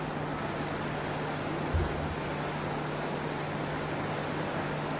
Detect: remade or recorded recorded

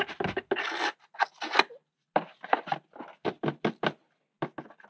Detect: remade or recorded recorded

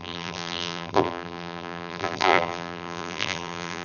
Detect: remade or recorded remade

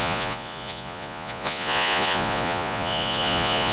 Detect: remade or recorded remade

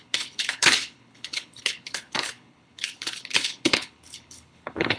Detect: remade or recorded remade